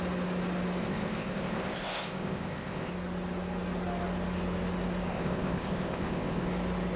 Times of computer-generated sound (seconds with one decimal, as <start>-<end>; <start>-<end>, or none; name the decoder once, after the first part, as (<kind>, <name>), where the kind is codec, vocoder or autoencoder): 0.8-2.9 (codec, ZipCodec); 5.1-6.5